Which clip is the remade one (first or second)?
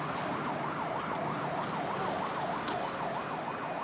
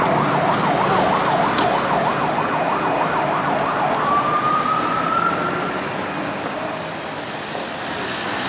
first